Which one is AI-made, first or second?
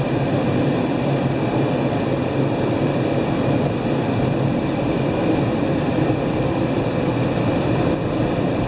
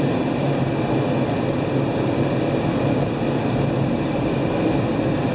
first